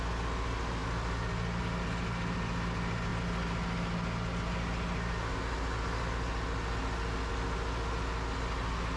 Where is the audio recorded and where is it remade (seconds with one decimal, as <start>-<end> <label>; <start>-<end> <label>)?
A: 0.0-9.0 recorded